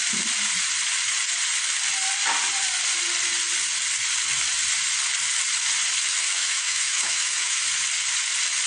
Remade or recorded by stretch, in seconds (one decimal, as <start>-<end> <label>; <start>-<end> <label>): 0.0-6.1 recorded; 6.1-7.6 remade; 7.6-8.7 recorded